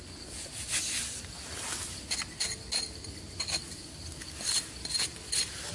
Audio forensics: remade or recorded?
recorded